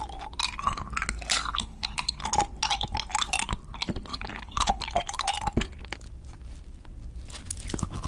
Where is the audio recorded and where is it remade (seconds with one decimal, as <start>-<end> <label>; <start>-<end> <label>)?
0.0-1.5 recorded; 1.5-2.2 remade; 2.2-4.1 recorded; 4.1-4.8 remade; 4.8-8.1 recorded